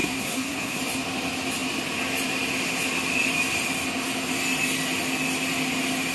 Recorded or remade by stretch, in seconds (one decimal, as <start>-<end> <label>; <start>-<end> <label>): 0.0-0.8 remade; 0.8-6.1 recorded